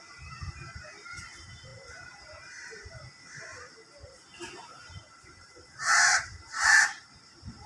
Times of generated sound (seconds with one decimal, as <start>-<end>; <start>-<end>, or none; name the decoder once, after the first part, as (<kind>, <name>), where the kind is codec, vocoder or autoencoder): 0.0-3.5 (vocoder, BigVGAN v2); 4.8-7.7